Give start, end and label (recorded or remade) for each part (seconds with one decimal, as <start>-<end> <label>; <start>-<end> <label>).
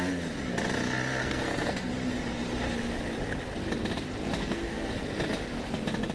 0.0-1.2 recorded; 1.2-1.9 remade; 1.9-4.4 recorded; 4.4-5.0 remade; 5.0-6.1 recorded